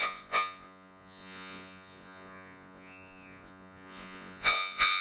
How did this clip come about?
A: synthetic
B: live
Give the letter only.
A